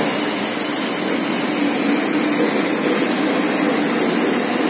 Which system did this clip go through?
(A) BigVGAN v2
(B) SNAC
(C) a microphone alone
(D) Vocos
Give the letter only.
C